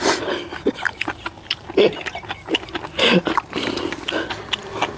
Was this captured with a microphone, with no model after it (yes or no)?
yes